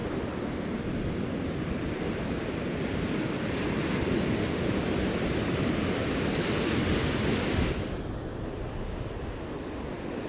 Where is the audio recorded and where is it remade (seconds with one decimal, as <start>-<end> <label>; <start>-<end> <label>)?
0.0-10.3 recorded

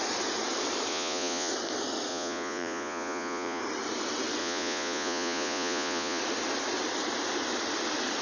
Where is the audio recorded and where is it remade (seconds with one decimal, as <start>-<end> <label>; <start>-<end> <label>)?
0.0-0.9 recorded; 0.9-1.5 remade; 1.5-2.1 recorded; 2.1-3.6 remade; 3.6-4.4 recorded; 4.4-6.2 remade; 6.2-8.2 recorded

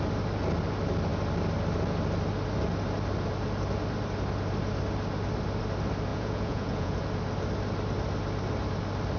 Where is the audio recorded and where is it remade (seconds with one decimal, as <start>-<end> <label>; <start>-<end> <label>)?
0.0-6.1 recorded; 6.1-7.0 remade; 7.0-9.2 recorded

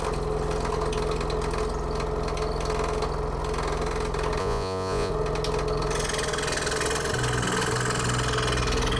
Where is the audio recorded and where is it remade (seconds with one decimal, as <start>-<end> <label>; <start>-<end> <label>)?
0.0-4.4 recorded; 4.4-5.1 remade; 5.1-9.0 recorded

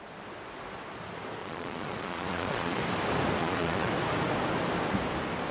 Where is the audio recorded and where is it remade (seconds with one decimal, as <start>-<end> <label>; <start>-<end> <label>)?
0.0-1.4 recorded; 1.4-2.8 remade; 2.8-3.4 recorded; 3.4-3.9 remade; 3.9-5.5 recorded

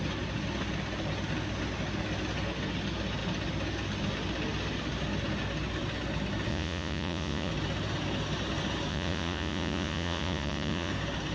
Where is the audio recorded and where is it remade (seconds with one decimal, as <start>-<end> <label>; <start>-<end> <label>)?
0.0-6.5 recorded; 6.5-7.5 remade; 7.5-8.9 recorded; 8.9-10.9 remade; 10.9-11.3 recorded